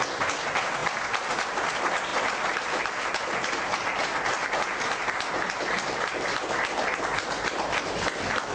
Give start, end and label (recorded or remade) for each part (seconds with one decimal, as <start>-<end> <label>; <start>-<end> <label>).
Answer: 0.0-8.5 recorded

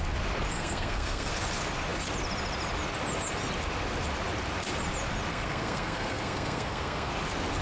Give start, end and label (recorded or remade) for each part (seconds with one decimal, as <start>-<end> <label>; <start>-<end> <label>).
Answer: 0.0-0.5 recorded; 0.5-1.3 remade; 1.3-5.3 recorded; 5.3-7.1 remade; 7.1-7.6 recorded